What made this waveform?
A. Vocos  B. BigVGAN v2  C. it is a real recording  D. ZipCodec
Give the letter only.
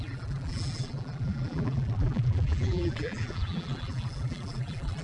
B